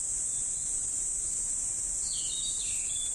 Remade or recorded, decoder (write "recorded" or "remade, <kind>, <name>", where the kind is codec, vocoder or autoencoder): recorded